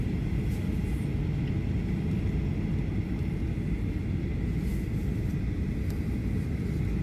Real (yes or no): yes